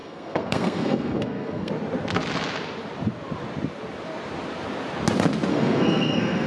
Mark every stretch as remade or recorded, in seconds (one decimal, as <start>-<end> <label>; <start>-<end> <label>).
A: 0.0-1.7 remade; 1.7-5.5 recorded; 5.5-6.5 remade